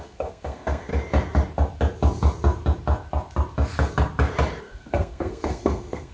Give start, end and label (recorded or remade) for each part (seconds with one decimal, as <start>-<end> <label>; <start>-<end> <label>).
0.0-0.9 remade; 0.9-4.6 recorded; 4.6-6.1 remade